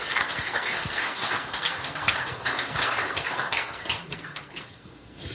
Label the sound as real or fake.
fake